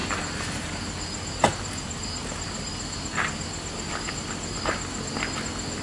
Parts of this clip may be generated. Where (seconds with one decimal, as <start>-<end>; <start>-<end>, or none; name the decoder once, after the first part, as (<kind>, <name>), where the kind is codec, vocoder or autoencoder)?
none